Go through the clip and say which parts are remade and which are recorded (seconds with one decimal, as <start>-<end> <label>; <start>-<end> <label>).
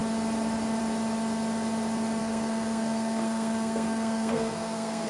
0.0-2.2 recorded; 2.2-5.1 remade